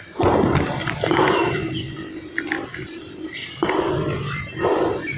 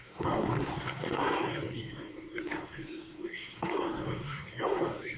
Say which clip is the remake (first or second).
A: second